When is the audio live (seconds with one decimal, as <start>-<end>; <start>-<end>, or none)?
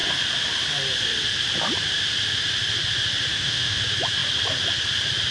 0.0-3.3; 3.8-5.3